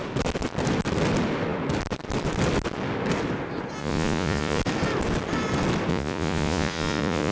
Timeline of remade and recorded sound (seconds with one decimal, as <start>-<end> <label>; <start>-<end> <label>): 0.0-3.8 recorded; 3.8-4.6 remade; 4.6-5.9 recorded; 5.9-7.3 remade